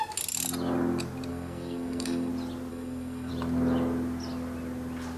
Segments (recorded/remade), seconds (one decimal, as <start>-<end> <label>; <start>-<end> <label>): 0.0-1.3 recorded; 1.3-2.3 remade; 2.3-2.7 recorded; 2.7-3.3 remade; 3.3-5.2 recorded